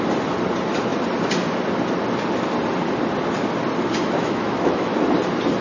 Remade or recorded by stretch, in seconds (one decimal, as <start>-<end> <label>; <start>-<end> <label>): 0.0-4.2 recorded; 4.2-4.9 remade; 4.9-5.6 recorded